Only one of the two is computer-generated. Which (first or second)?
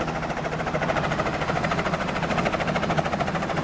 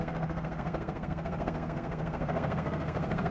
second